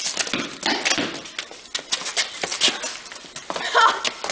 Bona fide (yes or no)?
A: yes